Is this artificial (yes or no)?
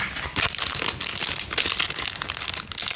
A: no